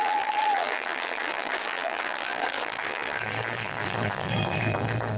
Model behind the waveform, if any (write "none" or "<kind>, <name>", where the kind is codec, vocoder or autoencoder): vocoder, Vocos